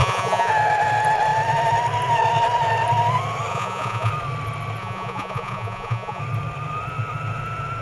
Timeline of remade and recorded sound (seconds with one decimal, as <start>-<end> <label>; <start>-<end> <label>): 0.0-0.5 remade; 0.5-3.5 recorded; 3.5-4.1 remade; 4.1-4.8 recorded; 4.8-6.2 remade; 6.2-7.8 recorded